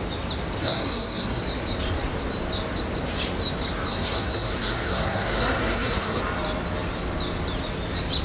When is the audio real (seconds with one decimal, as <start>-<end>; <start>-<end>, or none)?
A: 0.0-0.6; 1.4-3.9; 6.2-8.2